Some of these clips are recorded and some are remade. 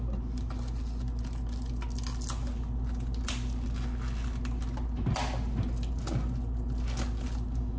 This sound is recorded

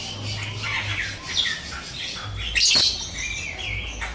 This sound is recorded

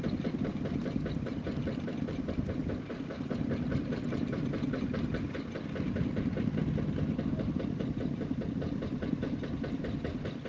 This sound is recorded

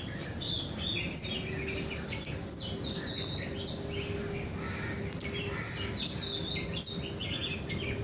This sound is recorded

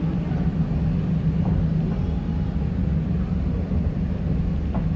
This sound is recorded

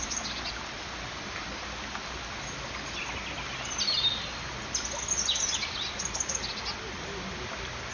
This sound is recorded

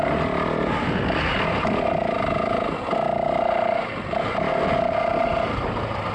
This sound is recorded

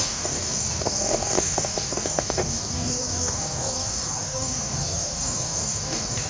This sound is remade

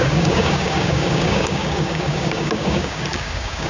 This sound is remade